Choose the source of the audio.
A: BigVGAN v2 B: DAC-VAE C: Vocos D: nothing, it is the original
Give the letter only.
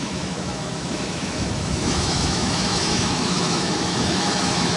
B